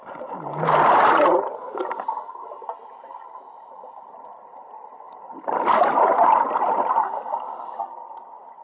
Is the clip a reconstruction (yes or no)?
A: no